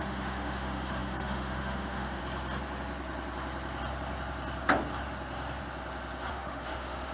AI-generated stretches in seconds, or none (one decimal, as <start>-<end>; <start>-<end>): 0.0-2.2; 6.3-7.1